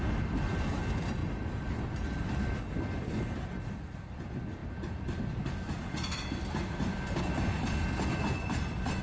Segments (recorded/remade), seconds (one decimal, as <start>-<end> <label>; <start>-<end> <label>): 0.0-9.0 recorded